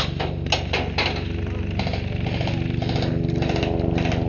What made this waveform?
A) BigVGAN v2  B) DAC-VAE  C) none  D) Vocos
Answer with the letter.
C